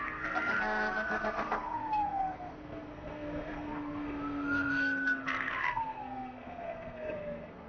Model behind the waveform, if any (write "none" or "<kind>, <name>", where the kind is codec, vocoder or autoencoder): codec, SNAC